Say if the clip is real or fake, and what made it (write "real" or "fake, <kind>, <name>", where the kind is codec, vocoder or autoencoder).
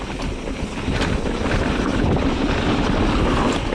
real